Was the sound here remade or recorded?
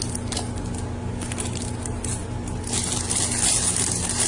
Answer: recorded